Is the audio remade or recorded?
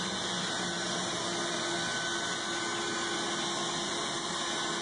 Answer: recorded